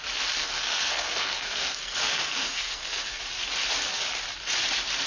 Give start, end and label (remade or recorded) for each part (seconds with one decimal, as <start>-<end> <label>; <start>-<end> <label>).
0.0-0.4 recorded; 0.4-3.2 remade; 3.2-5.1 recorded